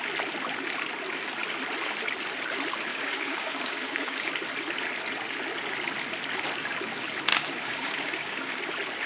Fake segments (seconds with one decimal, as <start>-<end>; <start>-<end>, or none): 2.9-4.3; 7.3-8.6

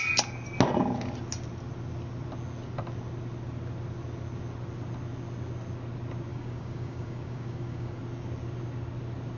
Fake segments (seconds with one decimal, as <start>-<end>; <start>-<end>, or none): 6.3-8.0

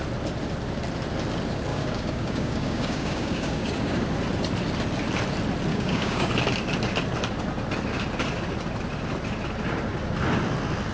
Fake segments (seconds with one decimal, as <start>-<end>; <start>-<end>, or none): 1.7-4.0; 5.7-6.3

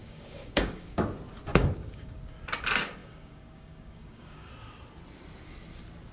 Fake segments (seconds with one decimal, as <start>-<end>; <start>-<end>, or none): 0.0-1.0; 1.5-2.2; 3.0-4.5

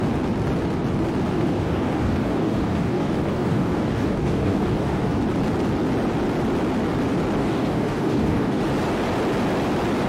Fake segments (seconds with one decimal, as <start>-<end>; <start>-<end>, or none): 1.3-5.2; 7.4-8.6